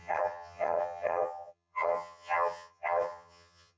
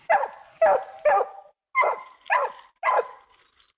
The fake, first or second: first